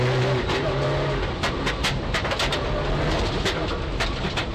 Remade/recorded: recorded